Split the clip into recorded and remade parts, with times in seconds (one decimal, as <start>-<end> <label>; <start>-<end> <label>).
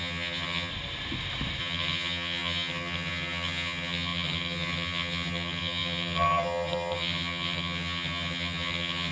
0.0-0.7 remade; 0.7-1.6 recorded; 1.6-9.1 remade